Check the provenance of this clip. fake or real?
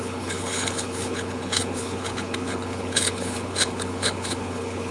fake